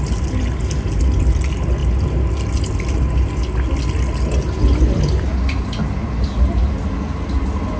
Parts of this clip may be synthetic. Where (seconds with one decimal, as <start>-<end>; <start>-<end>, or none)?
none

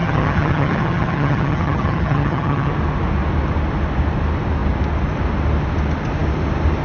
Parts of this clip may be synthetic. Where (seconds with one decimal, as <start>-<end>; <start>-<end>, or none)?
0.0-2.7

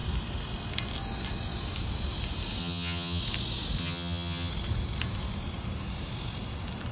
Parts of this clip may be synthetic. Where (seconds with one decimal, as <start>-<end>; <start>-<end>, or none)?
2.6-3.2; 3.8-4.5

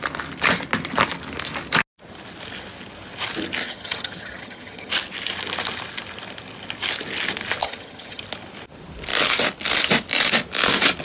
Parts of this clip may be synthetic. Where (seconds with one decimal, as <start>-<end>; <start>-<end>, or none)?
3.6-4.9; 7.6-8.2

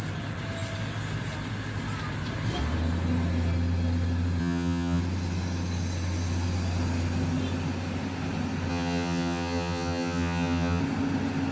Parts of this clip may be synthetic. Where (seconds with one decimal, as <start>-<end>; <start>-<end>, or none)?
4.4-5.0; 8.7-10.8

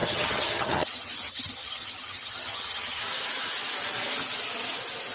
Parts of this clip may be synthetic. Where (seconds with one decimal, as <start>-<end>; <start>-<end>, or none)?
0.0-3.0